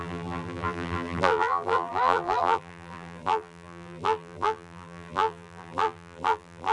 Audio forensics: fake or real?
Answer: fake